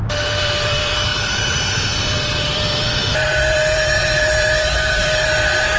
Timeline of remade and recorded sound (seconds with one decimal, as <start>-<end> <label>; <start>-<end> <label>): 0.0-5.8 remade